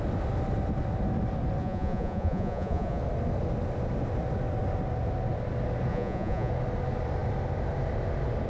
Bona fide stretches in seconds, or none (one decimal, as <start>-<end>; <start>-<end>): 0.0-1.6; 3.0-5.9; 6.5-8.5